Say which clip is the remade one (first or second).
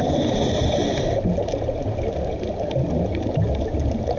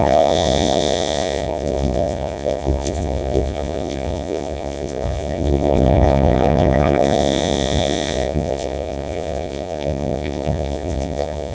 second